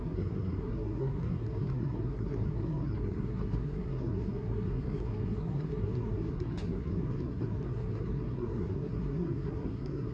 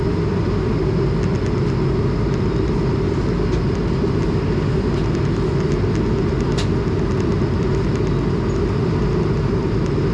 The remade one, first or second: first